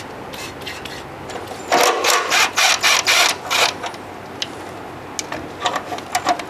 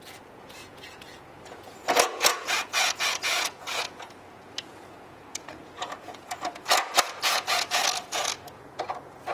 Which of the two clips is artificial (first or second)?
second